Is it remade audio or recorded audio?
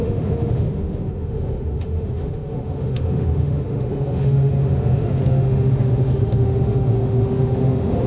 remade